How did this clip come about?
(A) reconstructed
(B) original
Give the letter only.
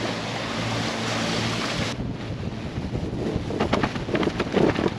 B